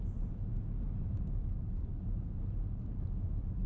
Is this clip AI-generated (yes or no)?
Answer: no